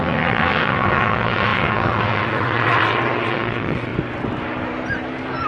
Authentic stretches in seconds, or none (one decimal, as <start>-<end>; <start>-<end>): 3.9-5.5